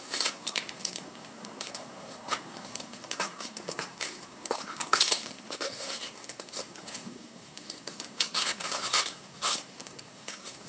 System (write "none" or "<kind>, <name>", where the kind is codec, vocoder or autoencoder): codec, SNAC